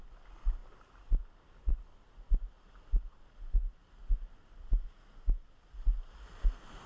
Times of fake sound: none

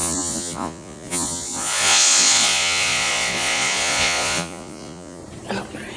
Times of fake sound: 0.0-5.2 (vocoder, Vocos)

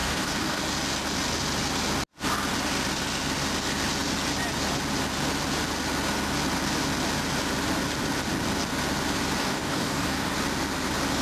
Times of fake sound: 0.0-0.6 (codec, DAC); 9.4-10.3